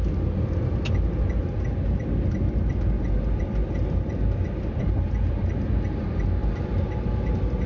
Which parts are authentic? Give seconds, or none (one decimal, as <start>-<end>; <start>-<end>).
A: 0.0-7.7